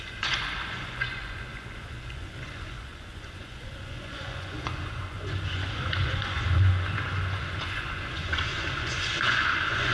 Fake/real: fake